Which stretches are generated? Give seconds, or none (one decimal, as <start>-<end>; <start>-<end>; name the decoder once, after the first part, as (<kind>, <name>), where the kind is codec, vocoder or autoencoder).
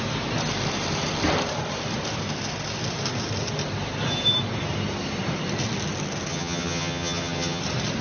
6.3-7.6 (vocoder, HiFi-GAN)